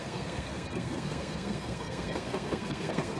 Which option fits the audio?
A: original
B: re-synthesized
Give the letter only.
B